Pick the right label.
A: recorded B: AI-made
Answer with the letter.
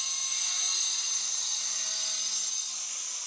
A